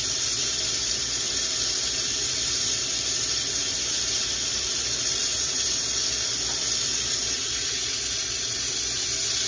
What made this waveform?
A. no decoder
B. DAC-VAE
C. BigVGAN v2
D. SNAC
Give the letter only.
C